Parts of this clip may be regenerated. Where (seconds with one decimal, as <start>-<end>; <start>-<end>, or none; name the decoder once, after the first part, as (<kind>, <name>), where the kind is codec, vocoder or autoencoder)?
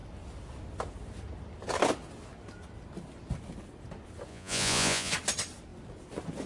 4.3-5.1 (vocoder, Vocos)